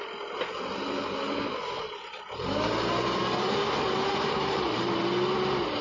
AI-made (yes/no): no